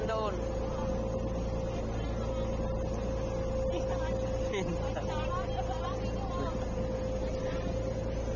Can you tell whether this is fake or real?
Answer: real